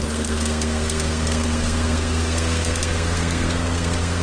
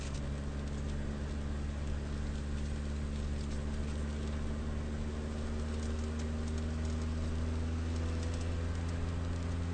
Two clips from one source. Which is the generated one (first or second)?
first